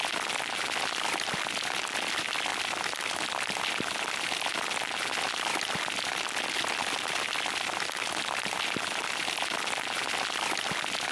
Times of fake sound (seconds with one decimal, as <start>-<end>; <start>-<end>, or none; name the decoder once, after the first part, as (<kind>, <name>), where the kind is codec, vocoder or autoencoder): none

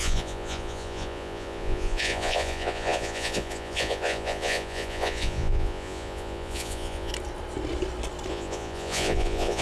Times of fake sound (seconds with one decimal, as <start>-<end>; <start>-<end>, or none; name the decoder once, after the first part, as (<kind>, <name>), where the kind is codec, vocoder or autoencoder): 0.0-7.1 (vocoder, Vocos); 8.3-9.6